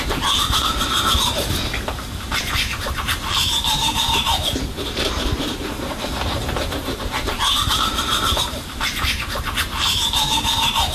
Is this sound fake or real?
fake